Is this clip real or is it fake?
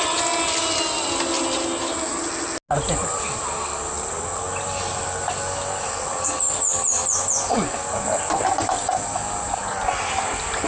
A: real